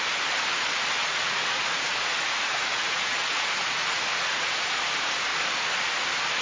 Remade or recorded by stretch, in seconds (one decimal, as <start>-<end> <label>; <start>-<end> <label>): 0.0-1.0 recorded; 1.0-4.8 remade; 4.8-6.4 recorded